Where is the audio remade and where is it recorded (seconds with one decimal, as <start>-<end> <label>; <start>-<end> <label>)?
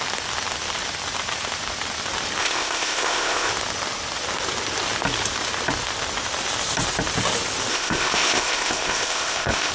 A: 0.0-2.4 recorded; 2.4-3.5 remade; 3.5-7.7 recorded; 7.7-9.7 remade